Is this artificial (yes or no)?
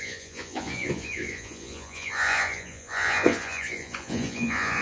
yes